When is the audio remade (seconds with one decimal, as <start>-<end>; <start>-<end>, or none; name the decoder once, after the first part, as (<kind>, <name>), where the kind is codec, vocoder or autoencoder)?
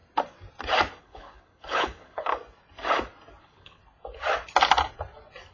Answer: 1.0-2.3 (codec, HILCodec); 3.4-3.8